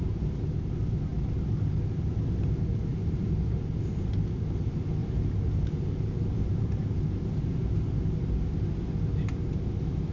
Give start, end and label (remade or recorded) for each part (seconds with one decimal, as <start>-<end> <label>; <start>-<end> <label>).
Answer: 0.0-2.9 recorded; 2.9-4.1 remade; 4.1-5.0 recorded; 5.0-8.3 remade; 8.3-10.1 recorded